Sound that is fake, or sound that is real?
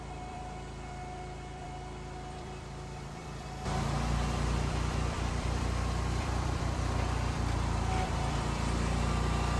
fake